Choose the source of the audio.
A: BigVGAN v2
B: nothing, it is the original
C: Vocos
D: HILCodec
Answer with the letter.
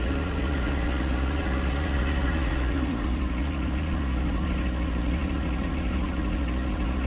C